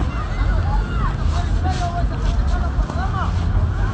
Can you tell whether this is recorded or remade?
recorded